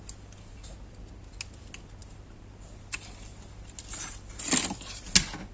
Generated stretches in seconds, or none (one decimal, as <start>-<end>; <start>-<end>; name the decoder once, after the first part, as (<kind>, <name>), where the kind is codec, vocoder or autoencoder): none